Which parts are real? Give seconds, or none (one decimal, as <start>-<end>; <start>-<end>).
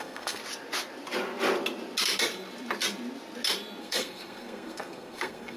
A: 0.4-3.8